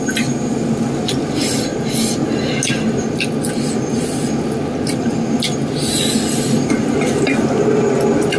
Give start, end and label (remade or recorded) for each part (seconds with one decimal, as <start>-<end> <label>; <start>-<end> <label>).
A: 0.0-8.4 recorded